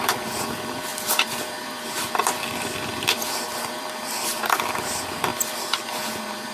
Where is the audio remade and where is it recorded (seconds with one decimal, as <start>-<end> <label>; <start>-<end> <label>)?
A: 0.0-6.5 remade